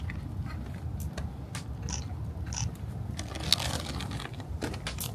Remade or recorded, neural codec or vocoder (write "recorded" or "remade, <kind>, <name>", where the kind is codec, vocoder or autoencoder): recorded